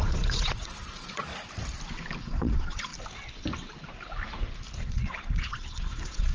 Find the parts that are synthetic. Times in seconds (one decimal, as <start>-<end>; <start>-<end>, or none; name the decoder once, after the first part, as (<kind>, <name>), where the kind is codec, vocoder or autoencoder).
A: 0.0-1.3 (vocoder, Vocos); 2.2-2.9; 4.8-6.3